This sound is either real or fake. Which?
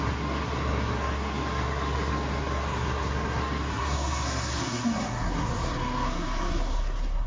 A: fake